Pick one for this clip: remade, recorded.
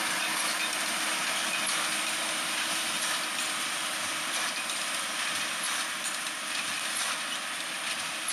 recorded